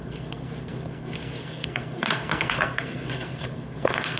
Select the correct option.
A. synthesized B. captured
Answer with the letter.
A